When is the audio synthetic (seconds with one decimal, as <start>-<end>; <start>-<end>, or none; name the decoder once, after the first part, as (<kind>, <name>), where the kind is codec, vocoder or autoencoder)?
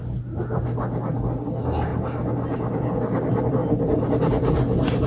none